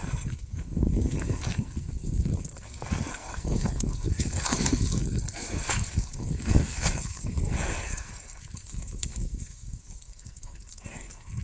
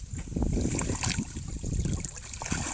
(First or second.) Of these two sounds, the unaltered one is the second